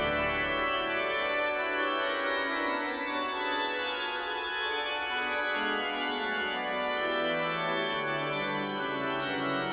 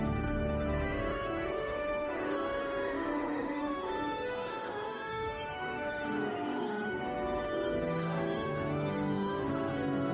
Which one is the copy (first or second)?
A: second